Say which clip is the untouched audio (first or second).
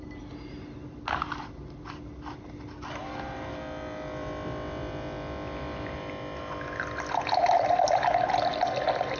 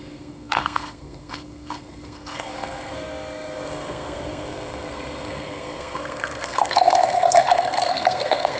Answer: first